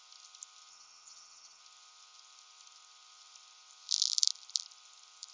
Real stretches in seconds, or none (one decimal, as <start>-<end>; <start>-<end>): 0.0-0.7; 1.6-5.3